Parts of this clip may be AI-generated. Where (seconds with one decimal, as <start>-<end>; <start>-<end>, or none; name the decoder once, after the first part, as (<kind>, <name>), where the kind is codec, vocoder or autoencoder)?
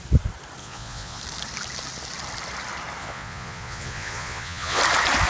0.6-1.2 (vocoder, Vocos); 3.0-4.8